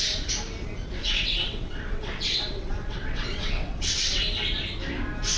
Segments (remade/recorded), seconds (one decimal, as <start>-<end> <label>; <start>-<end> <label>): 0.0-1.0 recorded; 1.0-4.2 remade; 4.2-5.4 recorded